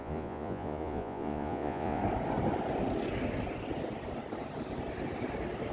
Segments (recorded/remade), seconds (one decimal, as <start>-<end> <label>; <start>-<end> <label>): 0.0-2.0 remade; 2.0-5.7 recorded